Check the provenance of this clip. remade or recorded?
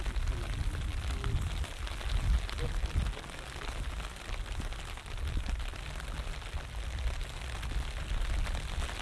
recorded